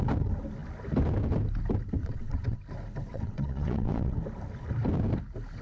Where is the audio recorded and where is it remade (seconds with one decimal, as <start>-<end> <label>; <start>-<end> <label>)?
0.0-2.0 recorded; 2.0-2.6 remade; 2.6-3.1 recorded; 3.1-4.1 remade; 4.1-5.6 recorded